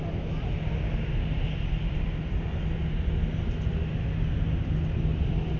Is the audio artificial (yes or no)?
no